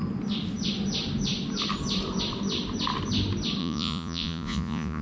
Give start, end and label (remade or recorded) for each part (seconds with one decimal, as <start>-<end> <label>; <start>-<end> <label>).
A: 0.0-3.6 recorded; 3.6-5.0 remade